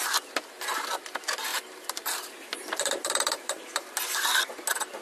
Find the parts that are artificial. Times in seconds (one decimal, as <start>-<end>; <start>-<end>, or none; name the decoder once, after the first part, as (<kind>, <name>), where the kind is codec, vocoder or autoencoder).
1.5-4.5 (vocoder, BigVGAN v2)

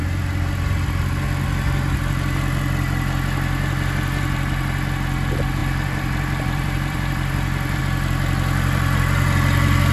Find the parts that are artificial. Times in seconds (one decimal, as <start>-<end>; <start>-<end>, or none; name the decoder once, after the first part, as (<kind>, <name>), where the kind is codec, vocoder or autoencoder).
5.6-7.8 (vocoder, BigVGAN v2)

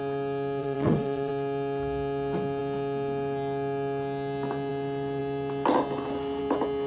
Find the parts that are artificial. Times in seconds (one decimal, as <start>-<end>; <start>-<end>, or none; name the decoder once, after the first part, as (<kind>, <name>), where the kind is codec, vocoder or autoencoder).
0.6-1.3 (vocoder, WaveNeXt)

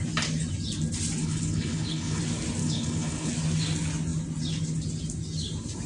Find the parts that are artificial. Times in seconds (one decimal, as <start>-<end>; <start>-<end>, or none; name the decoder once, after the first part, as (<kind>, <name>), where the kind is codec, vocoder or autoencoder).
1.2-2.2 (codec, HILCodec); 2.6-3.3